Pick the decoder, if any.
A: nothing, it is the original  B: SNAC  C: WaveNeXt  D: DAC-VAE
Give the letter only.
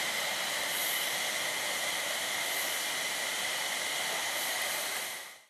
A